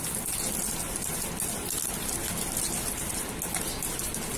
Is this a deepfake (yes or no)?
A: no